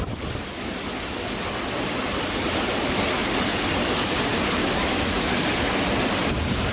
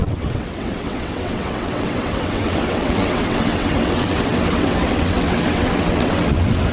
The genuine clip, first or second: first